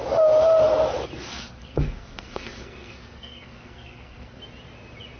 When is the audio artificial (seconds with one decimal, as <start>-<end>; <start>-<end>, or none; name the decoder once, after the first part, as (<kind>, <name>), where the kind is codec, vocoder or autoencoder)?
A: 1.3-4.4 (codec, SNAC)